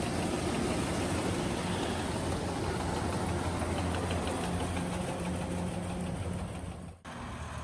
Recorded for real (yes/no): yes